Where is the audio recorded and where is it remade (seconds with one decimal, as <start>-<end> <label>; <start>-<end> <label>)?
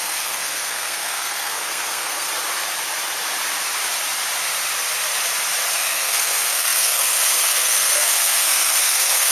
0.0-2.3 remade; 2.3-5.7 recorded; 5.7-9.3 remade